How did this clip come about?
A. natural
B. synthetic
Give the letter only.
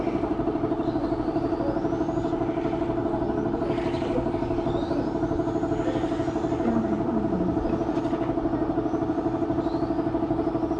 A